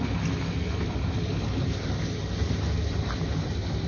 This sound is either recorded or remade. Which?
recorded